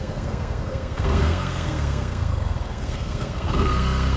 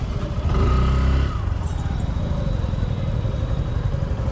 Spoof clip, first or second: first